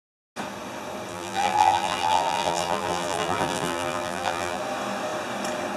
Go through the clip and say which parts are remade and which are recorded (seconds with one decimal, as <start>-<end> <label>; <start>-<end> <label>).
0.0-1.1 recorded; 1.1-4.6 remade; 4.6-5.8 recorded